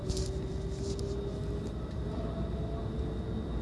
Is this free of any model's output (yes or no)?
yes